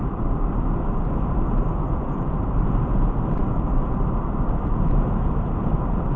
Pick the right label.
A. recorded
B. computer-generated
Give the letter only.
A